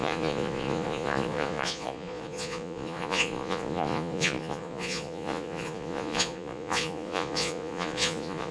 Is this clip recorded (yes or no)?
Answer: no